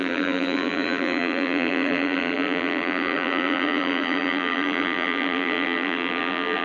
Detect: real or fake fake